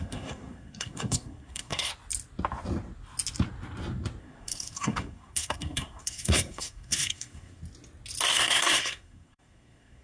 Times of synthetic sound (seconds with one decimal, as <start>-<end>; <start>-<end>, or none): 0.0-1.9; 4.2-7.6; 8.3-10.0

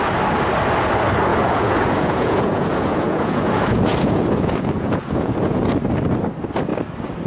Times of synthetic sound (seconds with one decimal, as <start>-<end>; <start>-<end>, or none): 1.3-5.7

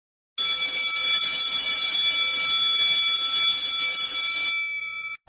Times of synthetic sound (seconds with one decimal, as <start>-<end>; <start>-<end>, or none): 1.0-2.0; 4.8-5.3

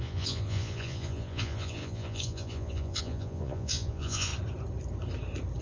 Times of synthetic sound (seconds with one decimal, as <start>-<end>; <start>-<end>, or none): 0.0-4.3

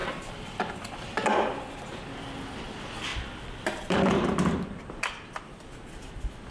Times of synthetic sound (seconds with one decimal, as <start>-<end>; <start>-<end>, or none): 0.0-0.7; 3.1-5.1

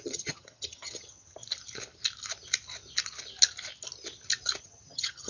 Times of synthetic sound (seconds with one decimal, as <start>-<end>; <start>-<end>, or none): 0.0-1.4; 4.6-5.3

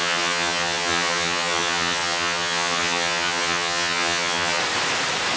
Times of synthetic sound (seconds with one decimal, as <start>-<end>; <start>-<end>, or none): 0.0-4.6